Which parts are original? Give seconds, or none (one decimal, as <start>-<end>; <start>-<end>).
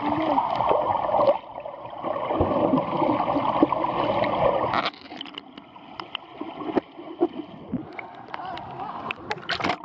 0.0-9.8